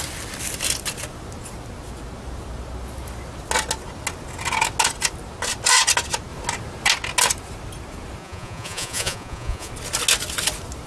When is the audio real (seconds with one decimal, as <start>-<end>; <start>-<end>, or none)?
0.0-8.2; 9.7-10.9